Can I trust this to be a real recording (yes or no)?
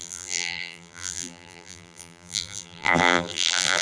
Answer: no